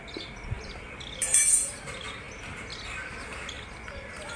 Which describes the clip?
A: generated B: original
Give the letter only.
B